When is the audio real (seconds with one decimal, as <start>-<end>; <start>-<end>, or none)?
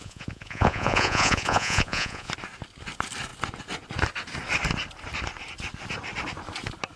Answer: 2.3-7.0